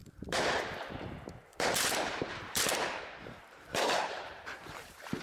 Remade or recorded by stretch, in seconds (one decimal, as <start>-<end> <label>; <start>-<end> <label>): 0.0-0.9 remade; 0.9-1.5 recorded; 1.5-2.6 remade; 2.6-3.2 recorded; 3.2-5.2 remade